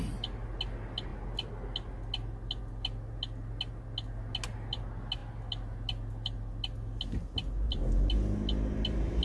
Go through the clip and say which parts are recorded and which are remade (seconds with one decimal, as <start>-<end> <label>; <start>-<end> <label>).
0.0-9.2 recorded